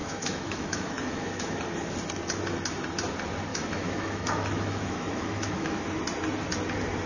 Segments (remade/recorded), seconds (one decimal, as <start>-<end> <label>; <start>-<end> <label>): 0.0-1.6 remade; 1.6-3.5 recorded; 3.5-5.8 remade; 5.8-7.1 recorded